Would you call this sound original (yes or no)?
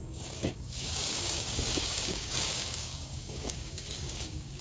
no